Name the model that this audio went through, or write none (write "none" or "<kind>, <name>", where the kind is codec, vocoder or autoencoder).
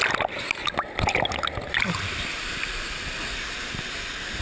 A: none